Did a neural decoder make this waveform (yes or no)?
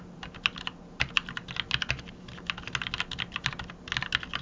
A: no